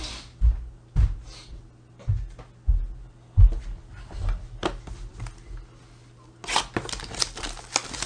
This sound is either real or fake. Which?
real